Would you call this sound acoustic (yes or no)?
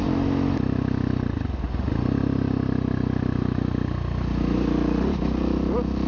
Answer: yes